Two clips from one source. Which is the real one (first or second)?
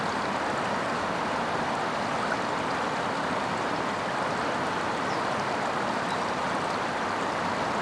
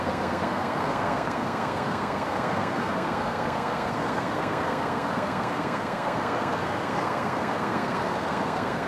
first